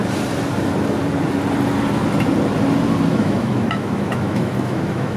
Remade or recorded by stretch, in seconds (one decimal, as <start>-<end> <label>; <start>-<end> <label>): 0.0-3.1 recorded; 3.1-5.2 remade